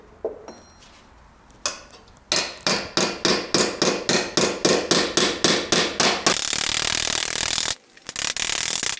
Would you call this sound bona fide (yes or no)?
yes